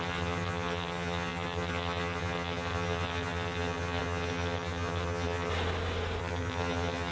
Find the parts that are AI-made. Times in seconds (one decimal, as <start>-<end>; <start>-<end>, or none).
0.0-5.5; 6.2-7.1